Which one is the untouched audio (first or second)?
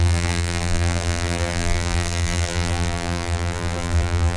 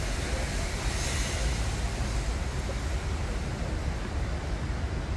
second